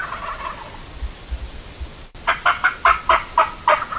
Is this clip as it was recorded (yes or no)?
yes